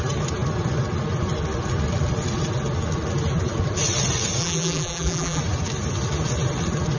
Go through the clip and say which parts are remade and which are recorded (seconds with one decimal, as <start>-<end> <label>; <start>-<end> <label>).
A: 0.0-4.4 recorded; 4.4-5.4 remade; 5.4-7.0 recorded